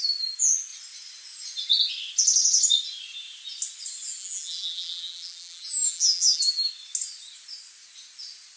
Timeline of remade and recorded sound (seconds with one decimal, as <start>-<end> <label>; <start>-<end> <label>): 0.0-4.2 recorded; 4.2-6.7 remade; 6.7-8.6 recorded